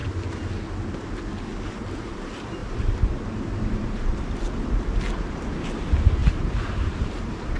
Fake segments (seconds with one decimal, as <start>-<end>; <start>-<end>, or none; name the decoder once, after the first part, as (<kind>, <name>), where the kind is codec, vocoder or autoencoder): 2.6-4.1 (vocoder, BigVGAN v2); 6.2-7.6